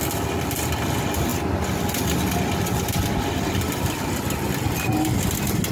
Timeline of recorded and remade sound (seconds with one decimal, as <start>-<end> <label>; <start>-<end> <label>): 0.0-5.7 recorded